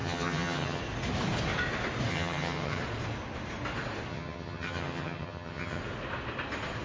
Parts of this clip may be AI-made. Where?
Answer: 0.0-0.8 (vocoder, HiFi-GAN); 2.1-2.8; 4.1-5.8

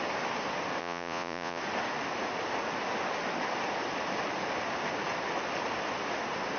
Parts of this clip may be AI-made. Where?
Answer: 0.8-1.6 (vocoder, Vocos)

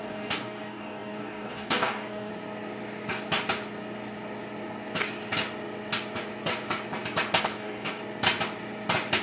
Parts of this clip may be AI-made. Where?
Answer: 0.0-2.3 (codec, DAC); 7.4-8.0

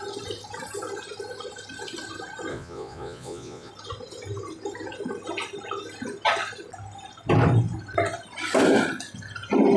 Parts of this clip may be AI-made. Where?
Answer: 2.5-3.7 (vocoder, Vocos)

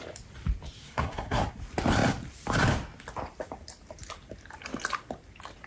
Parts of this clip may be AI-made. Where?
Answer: 0.8-1.4 (codec, SNAC)

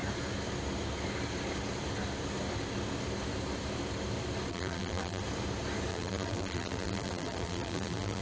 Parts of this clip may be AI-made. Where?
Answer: 4.5-5.2 (vocoder, BigVGAN v2); 5.9-8.2

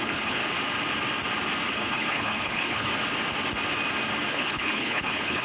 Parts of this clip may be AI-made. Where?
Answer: 0.0-0.4 (codec, HILCodec); 1.7-2.9; 4.3-5.4

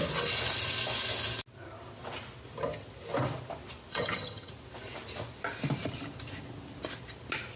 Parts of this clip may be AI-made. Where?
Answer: 3.9-4.5 (vocoder, HiFi-GAN)